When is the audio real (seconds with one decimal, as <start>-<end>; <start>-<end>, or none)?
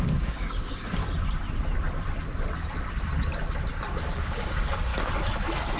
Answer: 1.0-4.0; 4.9-5.8